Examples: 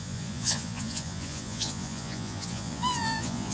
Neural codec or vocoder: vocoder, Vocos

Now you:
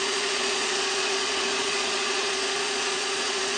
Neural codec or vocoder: vocoder, Vocos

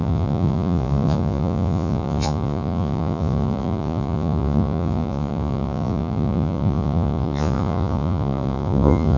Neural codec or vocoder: vocoder, Vocos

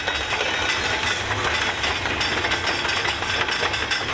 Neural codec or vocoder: none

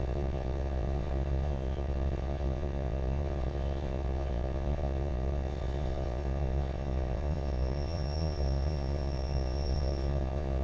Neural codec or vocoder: vocoder, Vocos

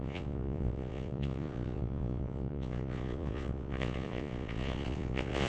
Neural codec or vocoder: vocoder, Vocos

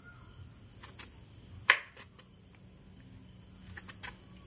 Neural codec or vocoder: none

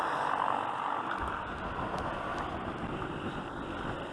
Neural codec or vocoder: none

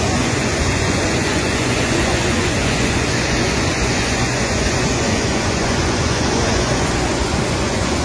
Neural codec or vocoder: vocoder, Vocos